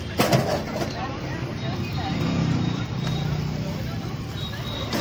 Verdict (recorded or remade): recorded